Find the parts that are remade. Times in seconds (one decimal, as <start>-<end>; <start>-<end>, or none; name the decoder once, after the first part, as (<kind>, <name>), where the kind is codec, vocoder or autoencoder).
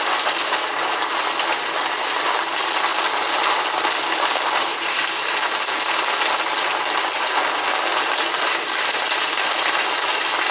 none